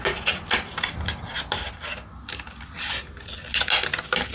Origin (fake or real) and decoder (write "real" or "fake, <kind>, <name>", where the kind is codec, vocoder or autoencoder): real